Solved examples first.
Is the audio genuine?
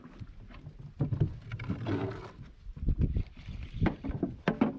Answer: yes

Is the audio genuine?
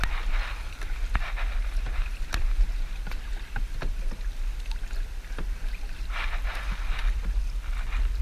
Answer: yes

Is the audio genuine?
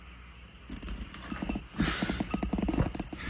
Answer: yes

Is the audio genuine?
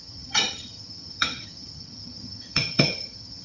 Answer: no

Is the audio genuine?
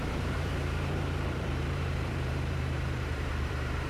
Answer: no